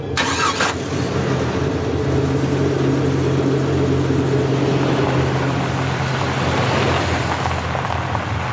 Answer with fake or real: real